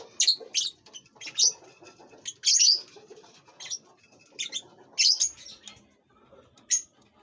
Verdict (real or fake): real